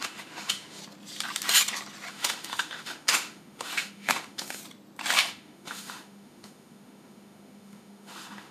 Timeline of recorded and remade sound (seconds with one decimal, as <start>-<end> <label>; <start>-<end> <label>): 0.0-0.8 remade; 0.8-2.1 recorded; 2.1-4.6 remade; 4.6-5.2 recorded; 5.2-8.5 remade